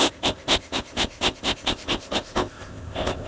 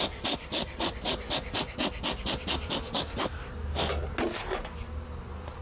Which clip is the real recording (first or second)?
second